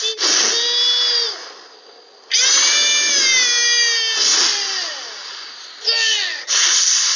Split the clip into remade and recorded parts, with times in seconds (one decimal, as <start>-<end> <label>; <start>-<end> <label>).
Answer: 0.0-7.2 recorded